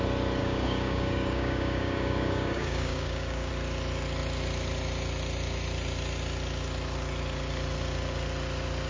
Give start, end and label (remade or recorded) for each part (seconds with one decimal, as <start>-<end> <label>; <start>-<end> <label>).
0.0-0.4 recorded; 0.4-3.5 remade; 3.5-8.9 recorded